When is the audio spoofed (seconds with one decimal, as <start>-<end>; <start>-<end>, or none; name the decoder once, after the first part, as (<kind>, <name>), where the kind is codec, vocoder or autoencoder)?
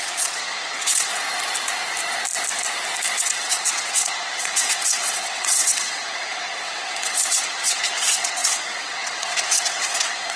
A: 0.0-1.1 (vocoder, WaveNeXt); 3.2-10.4